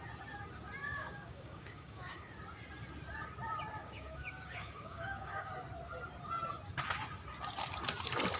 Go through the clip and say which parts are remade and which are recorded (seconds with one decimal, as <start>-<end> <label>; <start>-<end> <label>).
0.0-0.8 recorded; 0.8-2.3 remade; 2.3-3.8 recorded; 3.8-5.5 remade; 5.5-8.4 recorded